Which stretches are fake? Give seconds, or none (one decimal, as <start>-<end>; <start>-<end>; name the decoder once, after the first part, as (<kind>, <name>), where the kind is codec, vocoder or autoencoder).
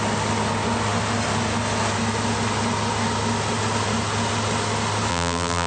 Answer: 5.1-5.7 (vocoder, BigVGAN v2)